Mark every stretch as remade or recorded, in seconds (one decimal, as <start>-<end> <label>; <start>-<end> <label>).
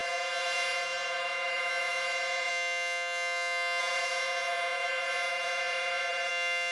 0.0-2.5 remade; 2.5-3.8 recorded; 3.8-6.3 remade; 6.3-6.7 recorded